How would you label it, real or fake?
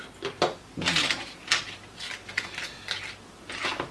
real